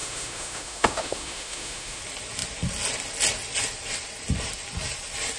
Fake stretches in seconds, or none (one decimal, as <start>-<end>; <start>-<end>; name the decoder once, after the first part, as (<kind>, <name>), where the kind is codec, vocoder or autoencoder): 0.0-2.0 (autoencoder, DAC-VAE)